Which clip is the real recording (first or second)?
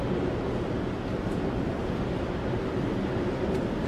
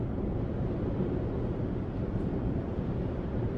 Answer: first